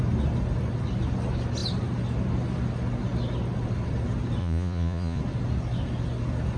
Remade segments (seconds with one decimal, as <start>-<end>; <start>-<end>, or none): 4.4-5.2